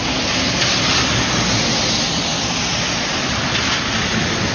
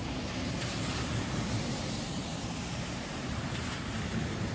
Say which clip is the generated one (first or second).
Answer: second